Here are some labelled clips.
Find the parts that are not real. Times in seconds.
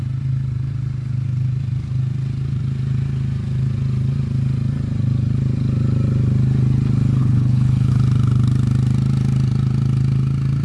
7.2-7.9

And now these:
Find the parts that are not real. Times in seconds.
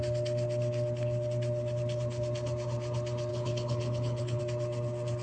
3.3-4.4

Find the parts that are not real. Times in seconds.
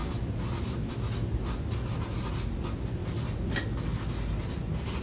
none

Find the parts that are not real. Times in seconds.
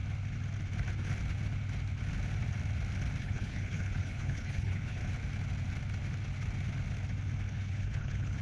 3.2-5.0; 7.5-8.4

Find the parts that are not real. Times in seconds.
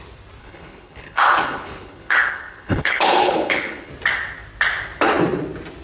0.4-3.9